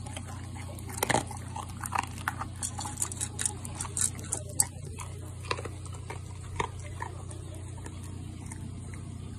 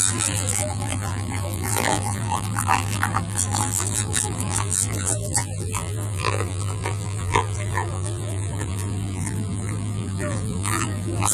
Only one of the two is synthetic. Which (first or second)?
second